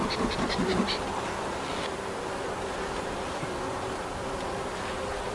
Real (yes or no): yes